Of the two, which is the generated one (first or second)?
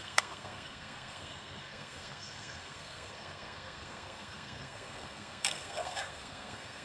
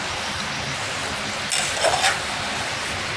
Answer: first